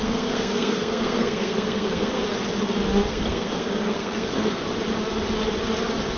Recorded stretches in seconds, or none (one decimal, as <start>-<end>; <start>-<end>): 2.2-3.1; 4.6-6.2